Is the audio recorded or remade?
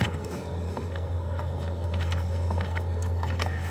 remade